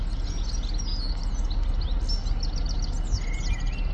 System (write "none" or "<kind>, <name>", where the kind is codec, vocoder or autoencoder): none